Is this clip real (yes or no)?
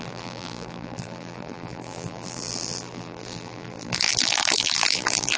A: no